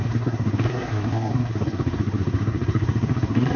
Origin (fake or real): fake